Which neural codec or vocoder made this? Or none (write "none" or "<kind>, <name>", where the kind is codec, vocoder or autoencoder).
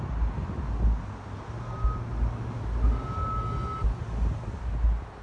none